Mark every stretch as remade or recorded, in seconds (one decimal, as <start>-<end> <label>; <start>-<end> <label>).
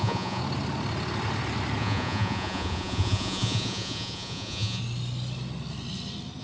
0.0-0.4 remade; 0.4-1.8 recorded; 1.8-4.8 remade; 4.8-6.4 recorded